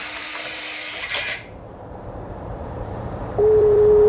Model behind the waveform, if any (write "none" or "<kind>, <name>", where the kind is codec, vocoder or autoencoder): vocoder, BigVGAN v2